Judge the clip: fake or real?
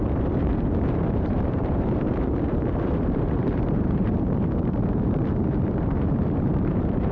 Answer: fake